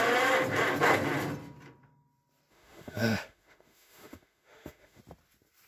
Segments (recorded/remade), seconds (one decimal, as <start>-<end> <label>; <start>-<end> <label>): 0.0-2.5 recorded; 2.5-5.0 remade; 5.0-5.7 recorded